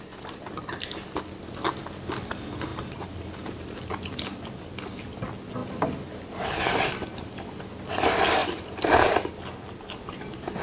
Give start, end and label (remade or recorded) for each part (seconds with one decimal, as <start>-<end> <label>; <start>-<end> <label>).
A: 0.0-2.7 recorded; 2.7-3.9 remade; 3.9-8.4 recorded; 8.4-9.3 remade; 9.3-10.6 recorded